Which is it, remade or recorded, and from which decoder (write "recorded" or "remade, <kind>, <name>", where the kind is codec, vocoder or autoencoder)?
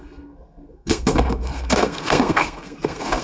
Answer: remade, codec, SNAC